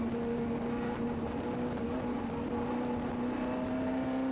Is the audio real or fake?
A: real